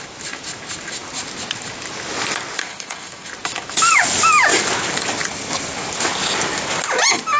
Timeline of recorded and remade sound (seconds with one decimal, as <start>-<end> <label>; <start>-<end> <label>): 0.0-2.6 recorded; 2.6-3.3 remade; 3.3-7.4 recorded